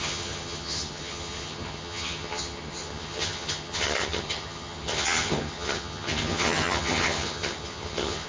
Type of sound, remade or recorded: remade